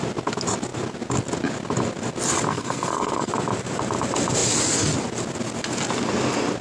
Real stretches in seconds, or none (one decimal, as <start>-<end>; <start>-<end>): 0.0-2.5; 3.3-6.6